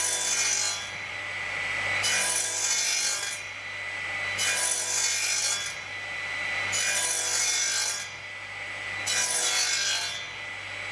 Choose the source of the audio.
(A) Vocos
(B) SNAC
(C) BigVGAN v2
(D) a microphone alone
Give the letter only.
D